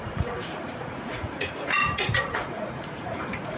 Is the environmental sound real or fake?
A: fake